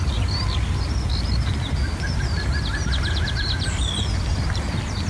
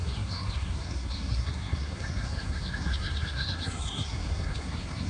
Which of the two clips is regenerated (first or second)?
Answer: second